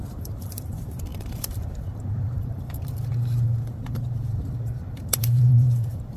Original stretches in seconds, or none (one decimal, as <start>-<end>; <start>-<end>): none

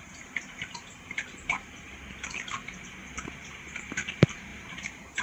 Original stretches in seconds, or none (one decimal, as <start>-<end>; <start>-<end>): 0.0-5.2